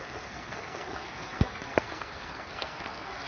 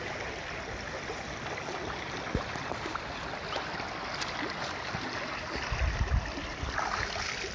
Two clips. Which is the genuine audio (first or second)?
second